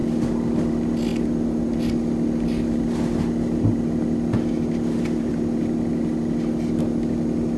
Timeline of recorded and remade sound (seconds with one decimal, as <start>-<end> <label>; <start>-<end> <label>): 0.0-7.6 recorded